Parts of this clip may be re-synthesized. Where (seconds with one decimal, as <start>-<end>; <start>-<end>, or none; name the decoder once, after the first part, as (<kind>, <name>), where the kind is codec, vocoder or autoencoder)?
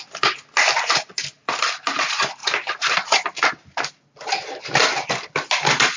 none